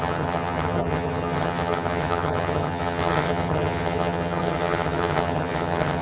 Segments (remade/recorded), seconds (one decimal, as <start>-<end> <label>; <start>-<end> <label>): 0.0-6.0 remade